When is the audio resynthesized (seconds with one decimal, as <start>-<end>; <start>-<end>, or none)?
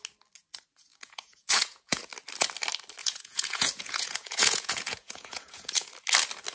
0.9-2.1; 3.0-5.9